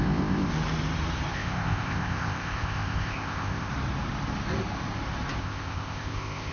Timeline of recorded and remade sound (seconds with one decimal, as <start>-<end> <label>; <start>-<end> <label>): 0.0-0.5 remade; 0.5-1.3 recorded; 1.3-3.7 remade; 3.7-5.4 recorded; 5.4-6.5 remade